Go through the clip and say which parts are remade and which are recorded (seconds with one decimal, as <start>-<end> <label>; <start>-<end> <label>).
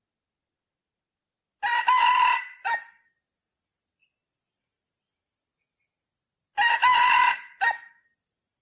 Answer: 0.0-8.6 recorded